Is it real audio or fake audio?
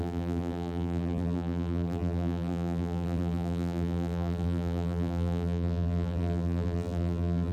fake